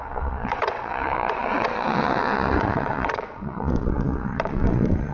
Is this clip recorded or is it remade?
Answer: remade